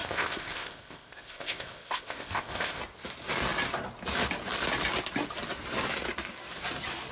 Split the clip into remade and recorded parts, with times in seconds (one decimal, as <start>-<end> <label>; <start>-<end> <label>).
0.0-2.8 remade; 2.8-7.1 recorded